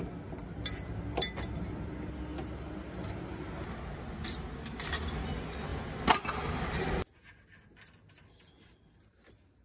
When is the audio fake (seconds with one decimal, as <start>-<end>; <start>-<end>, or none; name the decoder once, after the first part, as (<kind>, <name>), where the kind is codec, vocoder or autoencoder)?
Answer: none